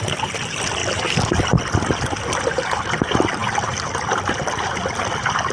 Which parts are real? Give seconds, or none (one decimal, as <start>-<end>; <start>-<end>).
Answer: 0.0-5.5